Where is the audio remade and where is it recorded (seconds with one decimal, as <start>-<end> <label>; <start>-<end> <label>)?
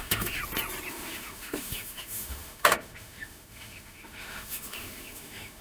0.0-0.4 remade; 0.4-0.9 recorded; 0.9-5.6 remade